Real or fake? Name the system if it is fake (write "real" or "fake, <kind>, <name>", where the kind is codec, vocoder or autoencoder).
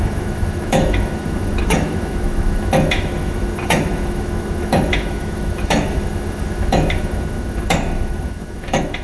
fake, autoencoder, DAC-VAE